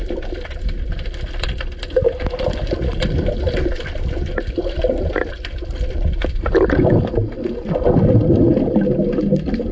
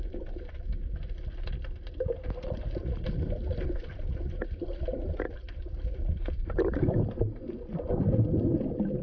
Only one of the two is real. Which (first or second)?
first